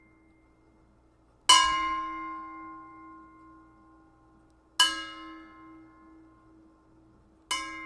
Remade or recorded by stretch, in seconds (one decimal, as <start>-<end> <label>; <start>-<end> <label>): 0.0-7.9 recorded